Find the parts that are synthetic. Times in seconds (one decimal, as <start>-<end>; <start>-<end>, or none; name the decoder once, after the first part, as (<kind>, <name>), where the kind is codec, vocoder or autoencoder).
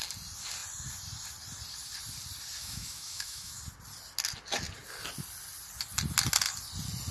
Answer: 2.6-3.6 (autoencoder, DAC-VAE)